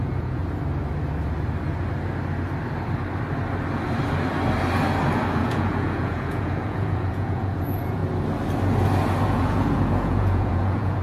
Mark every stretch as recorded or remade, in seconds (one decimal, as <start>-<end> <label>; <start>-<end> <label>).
0.0-0.4 remade; 0.4-5.3 recorded; 5.3-8.0 remade; 8.0-9.2 recorded; 9.2-11.0 remade